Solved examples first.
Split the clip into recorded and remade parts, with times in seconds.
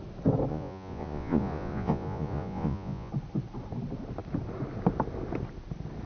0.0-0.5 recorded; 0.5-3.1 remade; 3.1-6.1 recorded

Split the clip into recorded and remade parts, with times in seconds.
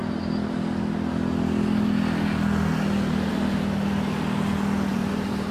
0.0-4.9 recorded; 4.9-5.5 remade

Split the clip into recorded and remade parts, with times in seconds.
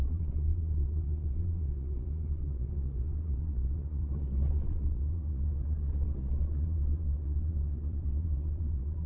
0.0-9.1 remade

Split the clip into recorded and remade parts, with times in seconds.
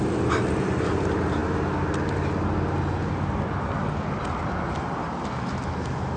0.0-6.2 recorded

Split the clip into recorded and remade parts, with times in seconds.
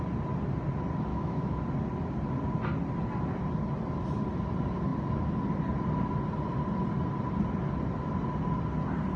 0.0-1.1 recorded; 1.1-1.6 remade; 1.6-9.2 recorded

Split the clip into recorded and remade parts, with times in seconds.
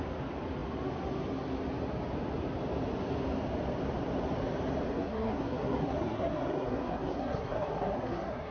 0.0-4.9 recorded; 4.9-8.5 remade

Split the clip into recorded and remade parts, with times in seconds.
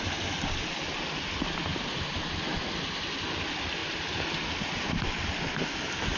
0.0-1.7 recorded; 1.7-2.4 remade; 2.4-6.2 recorded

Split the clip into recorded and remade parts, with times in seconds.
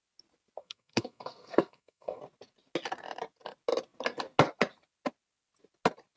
0.0-0.6 recorded; 0.6-2.2 remade; 2.2-6.2 recorded